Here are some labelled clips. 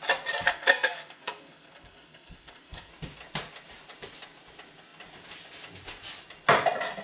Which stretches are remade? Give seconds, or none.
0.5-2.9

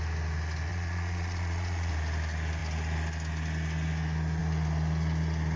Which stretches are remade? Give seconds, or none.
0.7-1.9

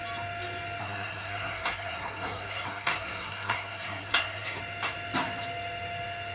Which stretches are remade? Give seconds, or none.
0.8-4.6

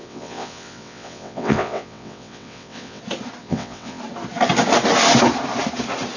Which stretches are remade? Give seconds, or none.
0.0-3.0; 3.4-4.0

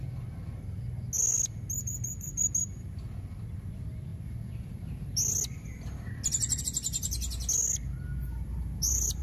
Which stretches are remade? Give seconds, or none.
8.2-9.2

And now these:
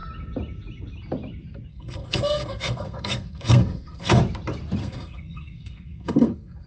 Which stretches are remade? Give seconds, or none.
1.7-4.2; 4.8-6.7

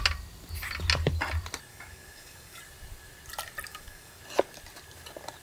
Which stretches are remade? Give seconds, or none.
1.7-2.6; 3.7-4.2